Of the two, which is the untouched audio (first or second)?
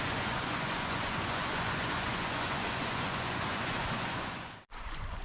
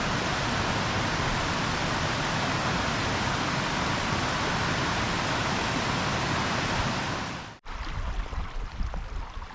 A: second